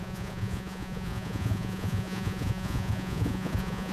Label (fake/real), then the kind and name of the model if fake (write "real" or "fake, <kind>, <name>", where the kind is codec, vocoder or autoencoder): fake, vocoder, Vocos